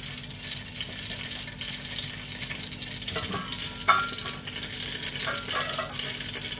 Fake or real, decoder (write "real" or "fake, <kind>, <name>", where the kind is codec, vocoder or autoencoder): real